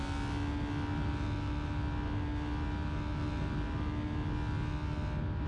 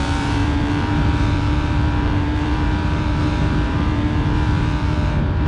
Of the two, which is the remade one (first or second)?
second